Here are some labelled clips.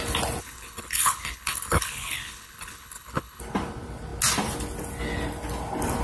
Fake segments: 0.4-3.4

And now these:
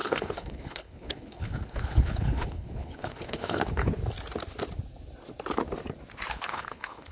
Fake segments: 0.0-4.0; 6.3-7.1

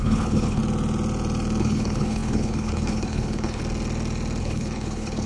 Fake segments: 0.0-0.6; 1.6-3.6; 4.4-5.3

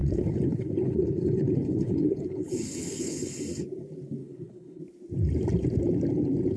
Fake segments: 0.0-3.4; 4.2-4.8

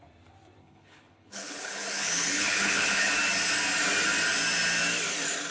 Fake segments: 0.6-3.1